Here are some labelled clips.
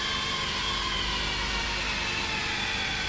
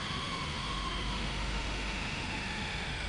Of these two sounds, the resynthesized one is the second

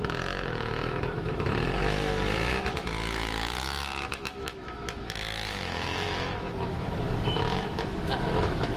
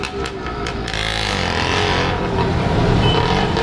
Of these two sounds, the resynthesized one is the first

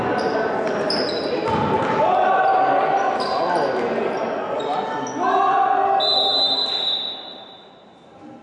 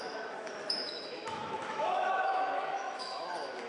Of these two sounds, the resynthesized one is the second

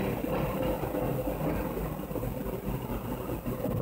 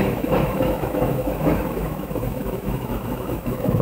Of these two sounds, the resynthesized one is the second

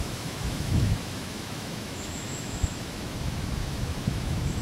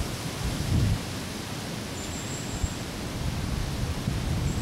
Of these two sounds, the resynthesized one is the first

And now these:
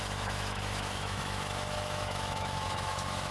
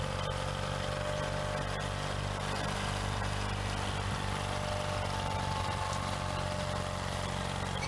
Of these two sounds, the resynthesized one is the first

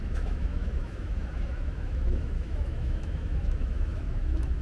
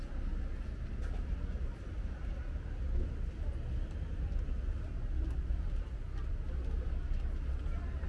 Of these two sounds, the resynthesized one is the first